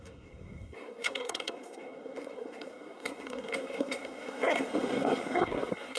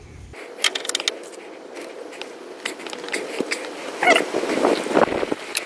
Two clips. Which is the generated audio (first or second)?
first